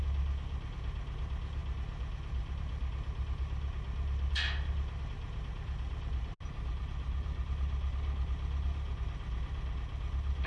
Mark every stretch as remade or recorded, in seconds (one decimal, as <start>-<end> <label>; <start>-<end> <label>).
0.0-10.5 recorded